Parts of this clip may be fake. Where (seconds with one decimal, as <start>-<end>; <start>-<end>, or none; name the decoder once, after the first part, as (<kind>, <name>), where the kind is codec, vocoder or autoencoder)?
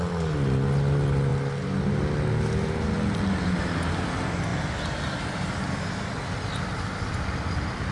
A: none